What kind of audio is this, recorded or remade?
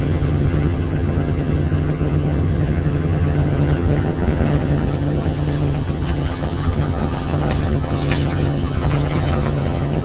remade